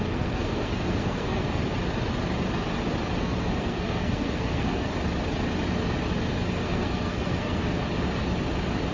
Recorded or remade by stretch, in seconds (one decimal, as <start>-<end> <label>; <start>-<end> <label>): 0.0-1.6 remade; 1.6-3.2 recorded; 3.2-4.9 remade; 4.9-6.6 recorded; 6.6-7.8 remade; 7.8-8.9 recorded